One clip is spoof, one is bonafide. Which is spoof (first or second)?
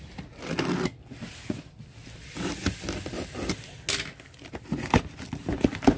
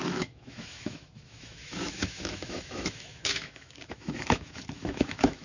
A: second